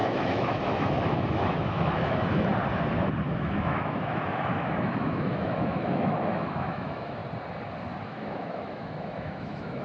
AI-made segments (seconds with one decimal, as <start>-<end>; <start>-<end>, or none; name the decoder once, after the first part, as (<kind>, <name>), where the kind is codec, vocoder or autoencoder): 0.0-2.5 (autoencoder, DAC-VAE); 3.3-7.2; 8.0-9.8